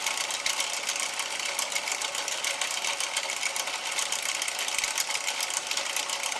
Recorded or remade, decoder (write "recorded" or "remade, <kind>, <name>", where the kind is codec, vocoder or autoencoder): recorded